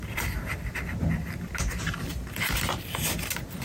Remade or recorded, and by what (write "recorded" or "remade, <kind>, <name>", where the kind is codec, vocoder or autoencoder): recorded